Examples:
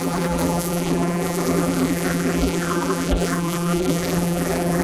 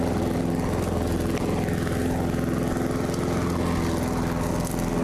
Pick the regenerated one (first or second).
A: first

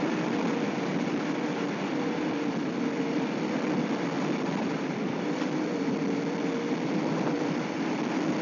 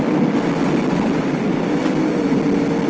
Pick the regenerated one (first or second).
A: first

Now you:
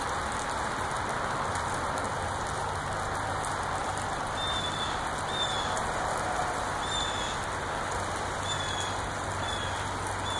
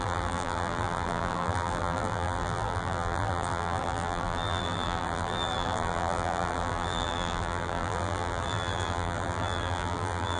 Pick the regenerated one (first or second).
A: second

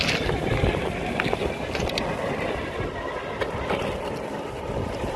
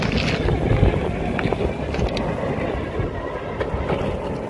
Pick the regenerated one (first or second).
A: first